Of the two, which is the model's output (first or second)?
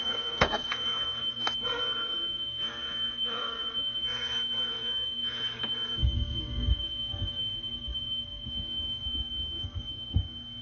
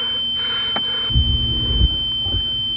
first